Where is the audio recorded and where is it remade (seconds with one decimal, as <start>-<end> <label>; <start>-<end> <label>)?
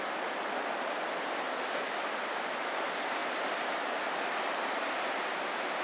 0.0-3.2 remade; 3.2-4.4 recorded; 4.4-5.8 remade